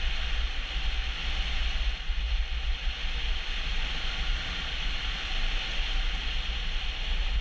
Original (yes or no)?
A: yes